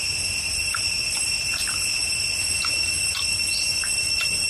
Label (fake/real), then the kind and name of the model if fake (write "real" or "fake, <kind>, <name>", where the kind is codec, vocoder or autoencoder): real